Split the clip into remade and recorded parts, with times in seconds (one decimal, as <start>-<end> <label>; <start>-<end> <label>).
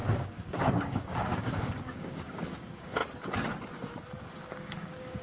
0.0-3.0 remade; 3.0-4.2 recorded; 4.2-5.2 remade